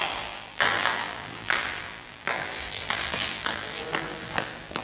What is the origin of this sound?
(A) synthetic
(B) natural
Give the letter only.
A